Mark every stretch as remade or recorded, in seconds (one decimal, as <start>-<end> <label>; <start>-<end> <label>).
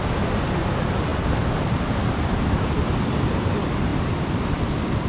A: 0.0-5.1 remade